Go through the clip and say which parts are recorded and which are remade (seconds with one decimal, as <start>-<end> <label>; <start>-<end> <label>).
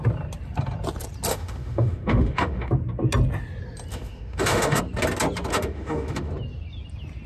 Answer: 0.0-1.3 recorded; 1.3-2.7 remade; 2.7-3.9 recorded; 3.9-4.8 remade; 4.8-5.5 recorded; 5.5-6.3 remade; 6.3-7.3 recorded